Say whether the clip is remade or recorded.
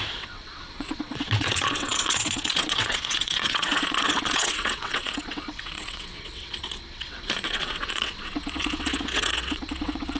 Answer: remade